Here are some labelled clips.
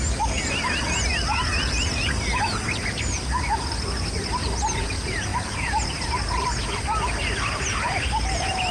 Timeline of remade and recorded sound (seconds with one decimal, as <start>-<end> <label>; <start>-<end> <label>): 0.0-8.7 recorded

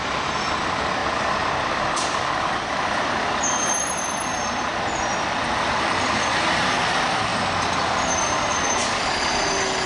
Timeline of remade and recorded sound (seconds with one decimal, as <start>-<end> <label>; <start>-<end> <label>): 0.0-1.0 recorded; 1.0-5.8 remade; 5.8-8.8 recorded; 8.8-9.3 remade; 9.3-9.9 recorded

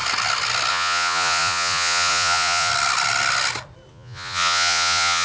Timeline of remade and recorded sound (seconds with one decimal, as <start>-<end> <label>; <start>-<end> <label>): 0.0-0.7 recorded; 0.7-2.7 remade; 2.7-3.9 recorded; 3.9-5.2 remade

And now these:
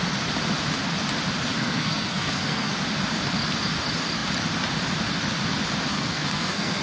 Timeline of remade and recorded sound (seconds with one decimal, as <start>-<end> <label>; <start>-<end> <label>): 0.0-1.6 recorded; 1.6-2.7 remade; 2.7-5.9 recorded; 5.9-6.8 remade

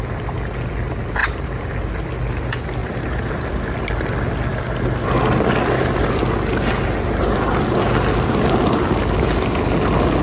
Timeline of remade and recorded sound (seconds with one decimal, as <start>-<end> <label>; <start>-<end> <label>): 0.0-1.2 recorded; 1.2-1.7 remade; 1.7-2.8 recorded; 2.8-3.5 remade; 3.5-10.2 recorded